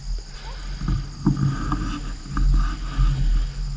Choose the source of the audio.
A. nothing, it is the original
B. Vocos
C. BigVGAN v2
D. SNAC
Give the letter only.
A